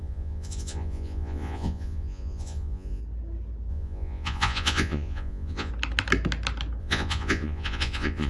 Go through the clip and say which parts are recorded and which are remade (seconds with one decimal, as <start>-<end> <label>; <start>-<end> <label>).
0.0-3.0 remade; 3.0-3.7 recorded; 3.7-5.7 remade; 5.7-6.8 recorded; 6.8-8.3 remade

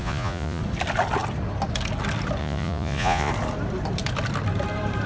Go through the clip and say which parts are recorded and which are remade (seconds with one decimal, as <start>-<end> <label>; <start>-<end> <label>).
0.0-0.6 remade; 0.6-2.4 recorded; 2.4-3.3 remade; 3.3-5.1 recorded